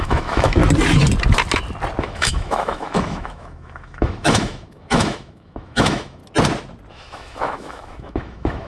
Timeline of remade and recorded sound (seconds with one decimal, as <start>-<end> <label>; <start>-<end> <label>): 0.0-0.6 remade; 0.6-2.0 recorded; 2.0-6.2 remade; 6.2-6.9 recorded; 6.9-8.7 remade